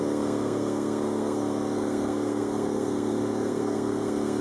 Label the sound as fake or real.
fake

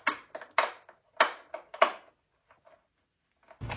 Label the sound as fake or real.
real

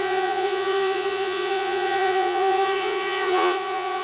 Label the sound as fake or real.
fake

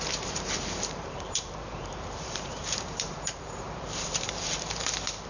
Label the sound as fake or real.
fake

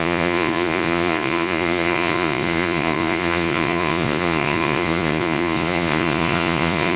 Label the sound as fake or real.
fake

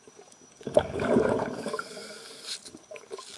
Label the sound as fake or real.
fake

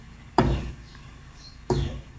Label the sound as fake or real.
fake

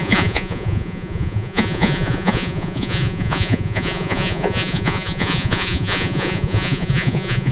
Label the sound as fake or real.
fake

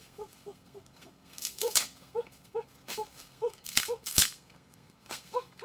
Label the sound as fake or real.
fake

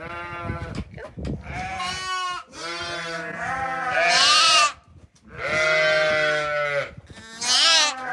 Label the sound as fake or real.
real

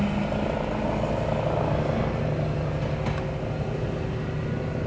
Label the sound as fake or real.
real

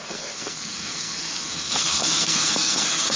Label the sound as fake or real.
fake